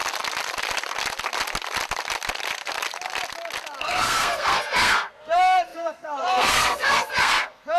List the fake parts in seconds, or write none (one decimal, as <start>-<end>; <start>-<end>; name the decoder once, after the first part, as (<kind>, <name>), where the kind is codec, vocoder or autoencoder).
3.8-7.8 (codec, SNAC)